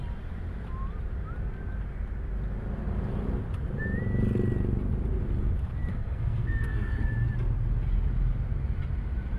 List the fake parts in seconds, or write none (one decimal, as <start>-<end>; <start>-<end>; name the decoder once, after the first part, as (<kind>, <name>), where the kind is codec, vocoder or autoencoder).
5.9-7.1 (codec, SNAC)